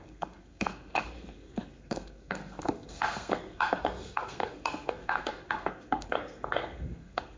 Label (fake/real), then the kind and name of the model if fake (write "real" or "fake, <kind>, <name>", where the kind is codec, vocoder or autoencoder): fake, codec, SNAC